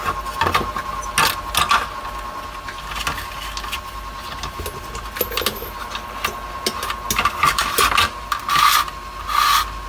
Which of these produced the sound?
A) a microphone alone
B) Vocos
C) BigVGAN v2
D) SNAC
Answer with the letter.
A